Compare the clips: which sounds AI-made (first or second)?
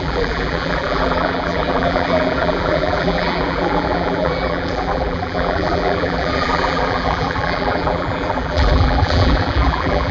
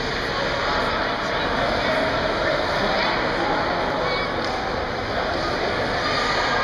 first